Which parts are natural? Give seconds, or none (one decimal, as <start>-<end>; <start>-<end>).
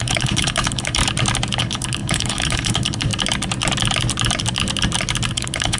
1.0-1.6; 3.1-5.3